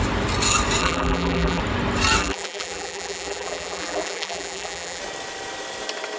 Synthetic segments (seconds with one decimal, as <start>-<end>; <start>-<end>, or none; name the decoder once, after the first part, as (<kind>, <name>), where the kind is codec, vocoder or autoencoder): 0.8-1.6 (vocoder, BigVGAN v2); 2.2-5.0